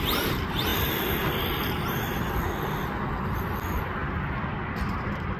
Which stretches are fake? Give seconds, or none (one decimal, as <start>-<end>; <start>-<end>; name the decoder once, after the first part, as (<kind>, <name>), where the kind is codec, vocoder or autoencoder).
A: none